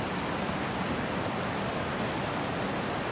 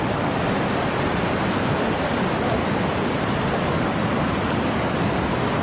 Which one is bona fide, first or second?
first